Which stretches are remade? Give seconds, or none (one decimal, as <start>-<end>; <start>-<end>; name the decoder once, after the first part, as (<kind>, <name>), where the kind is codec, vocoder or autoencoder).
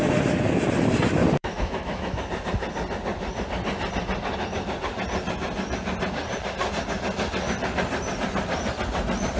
1.4-2.2 (autoencoder, DAC-VAE)